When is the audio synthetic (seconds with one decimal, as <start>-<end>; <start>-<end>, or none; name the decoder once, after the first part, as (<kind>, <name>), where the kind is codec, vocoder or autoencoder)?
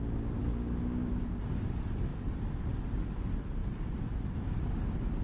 0.4-1.1 (codec, DAC)